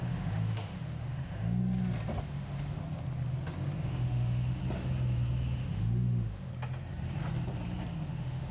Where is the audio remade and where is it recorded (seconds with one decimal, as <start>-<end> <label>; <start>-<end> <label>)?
0.0-1.6 remade; 1.6-2.2 recorded; 2.2-2.8 remade; 2.8-3.8 recorded; 3.8-4.6 remade; 4.6-5.6 recorded; 5.6-6.5 remade; 6.5-8.1 recorded; 8.1-8.5 remade